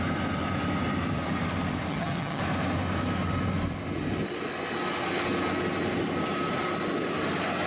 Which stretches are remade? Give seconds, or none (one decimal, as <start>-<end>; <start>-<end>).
1.9-2.4